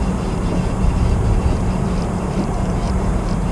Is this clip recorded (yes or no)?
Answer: no